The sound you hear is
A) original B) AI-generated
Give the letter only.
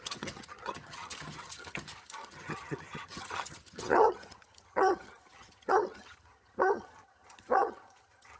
B